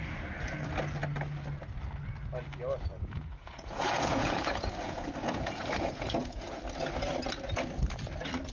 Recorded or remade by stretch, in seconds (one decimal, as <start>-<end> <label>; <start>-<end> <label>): 0.0-2.9 recorded; 2.9-6.6 remade; 6.6-8.5 recorded